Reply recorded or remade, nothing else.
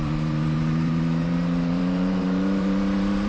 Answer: remade